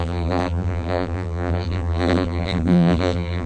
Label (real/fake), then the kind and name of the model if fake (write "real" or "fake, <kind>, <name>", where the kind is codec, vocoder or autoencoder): fake, vocoder, BigVGAN v2